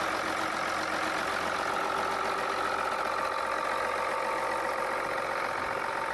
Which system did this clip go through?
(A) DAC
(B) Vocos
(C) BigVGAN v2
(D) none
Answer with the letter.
D